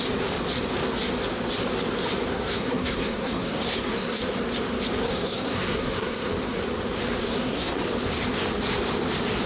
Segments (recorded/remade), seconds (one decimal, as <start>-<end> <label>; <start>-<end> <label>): 0.0-2.3 recorded; 2.3-4.2 remade; 4.2-5.0 recorded; 5.0-6.3 remade; 6.3-7.2 recorded; 7.2-7.8 remade; 7.8-9.5 recorded